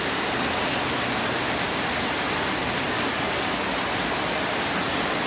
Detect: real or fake real